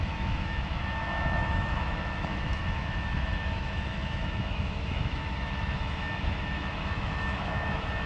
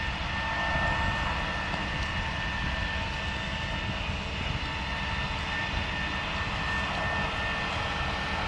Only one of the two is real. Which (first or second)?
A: second